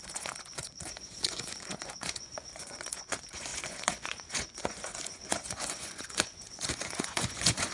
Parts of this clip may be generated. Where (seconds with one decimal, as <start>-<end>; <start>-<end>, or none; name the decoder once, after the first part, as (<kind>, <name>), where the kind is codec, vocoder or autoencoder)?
0.0-7.7 (vocoder, Vocos)